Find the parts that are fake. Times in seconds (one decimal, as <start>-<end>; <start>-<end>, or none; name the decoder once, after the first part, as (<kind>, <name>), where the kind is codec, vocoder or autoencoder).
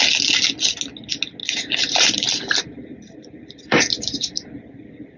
1.4-4.5 (vocoder, BigVGAN v2)